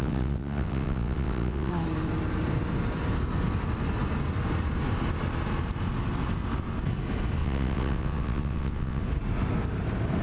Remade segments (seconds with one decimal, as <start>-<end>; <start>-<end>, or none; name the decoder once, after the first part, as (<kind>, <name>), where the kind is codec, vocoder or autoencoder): 0.0-1.7 (vocoder, WaveNeXt); 7.4-9.0